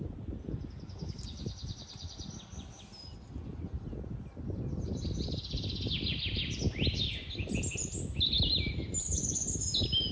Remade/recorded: recorded